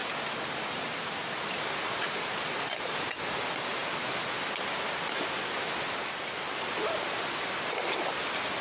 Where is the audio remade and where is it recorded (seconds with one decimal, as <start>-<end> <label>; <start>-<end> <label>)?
0.0-8.6 recorded